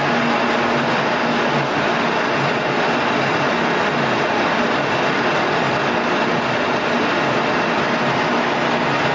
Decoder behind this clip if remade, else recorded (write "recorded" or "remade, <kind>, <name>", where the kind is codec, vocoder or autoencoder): recorded